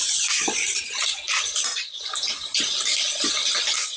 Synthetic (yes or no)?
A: no